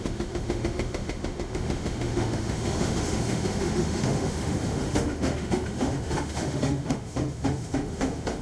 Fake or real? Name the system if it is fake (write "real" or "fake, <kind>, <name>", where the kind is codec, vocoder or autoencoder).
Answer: fake, autoencoder, DAC-VAE